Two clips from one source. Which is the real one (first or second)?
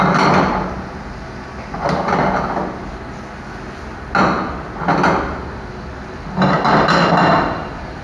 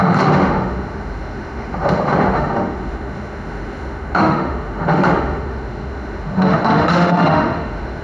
first